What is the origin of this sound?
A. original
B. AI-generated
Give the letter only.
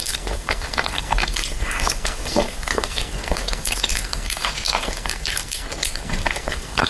B